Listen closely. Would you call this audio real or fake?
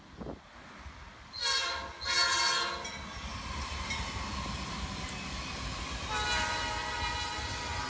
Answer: real